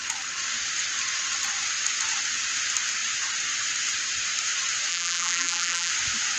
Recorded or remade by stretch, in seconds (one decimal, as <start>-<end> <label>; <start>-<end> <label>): 0.0-4.9 recorded; 4.9-5.9 remade; 5.9-6.4 recorded